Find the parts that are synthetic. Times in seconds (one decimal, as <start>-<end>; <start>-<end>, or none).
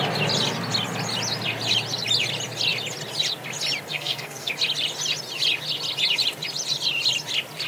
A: 3.9-4.5